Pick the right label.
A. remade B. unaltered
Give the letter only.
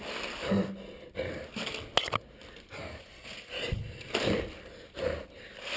B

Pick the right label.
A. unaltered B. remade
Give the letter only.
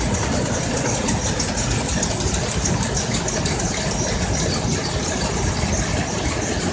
A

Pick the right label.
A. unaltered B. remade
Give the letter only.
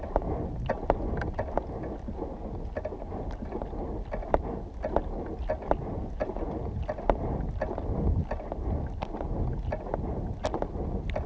A